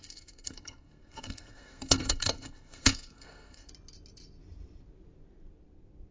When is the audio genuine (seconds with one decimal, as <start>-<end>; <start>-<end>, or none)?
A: 3.7-6.1